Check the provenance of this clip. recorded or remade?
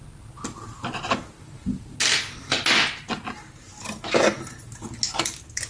recorded